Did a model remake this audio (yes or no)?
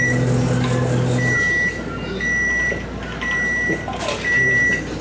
no